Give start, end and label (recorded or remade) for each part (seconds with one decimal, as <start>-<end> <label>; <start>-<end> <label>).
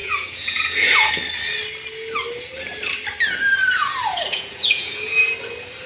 0.0-1.1 remade; 1.1-3.8 recorded; 3.8-5.2 remade; 5.2-5.9 recorded